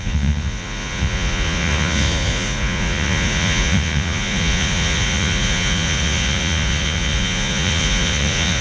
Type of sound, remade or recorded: remade